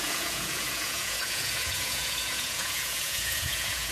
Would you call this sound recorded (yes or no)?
no